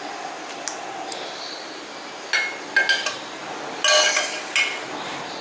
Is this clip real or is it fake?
real